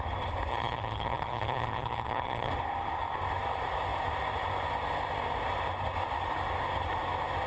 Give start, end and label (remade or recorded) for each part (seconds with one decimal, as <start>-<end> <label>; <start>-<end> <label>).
0.0-0.5 recorded; 0.5-2.5 remade; 2.5-7.5 recorded